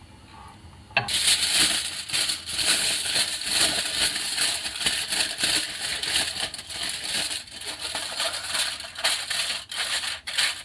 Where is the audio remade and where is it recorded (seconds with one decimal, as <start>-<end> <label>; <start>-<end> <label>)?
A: 0.0-2.6 recorded; 2.6-3.2 remade; 3.2-10.6 recorded